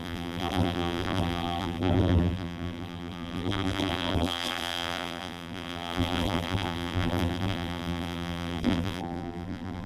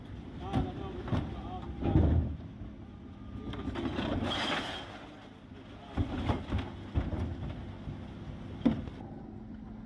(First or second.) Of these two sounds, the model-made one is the first